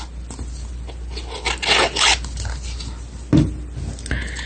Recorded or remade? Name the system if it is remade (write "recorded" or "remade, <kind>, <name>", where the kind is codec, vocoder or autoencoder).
recorded